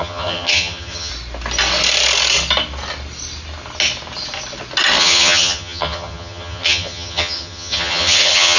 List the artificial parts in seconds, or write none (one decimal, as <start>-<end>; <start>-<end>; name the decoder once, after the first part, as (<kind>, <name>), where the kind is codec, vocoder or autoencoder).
0.0-1.1 (vocoder, HiFi-GAN); 5.0-8.6